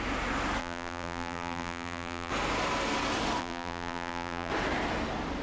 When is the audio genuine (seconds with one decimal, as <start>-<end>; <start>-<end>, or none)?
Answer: 0.0-0.6; 2.3-3.4; 4.5-5.4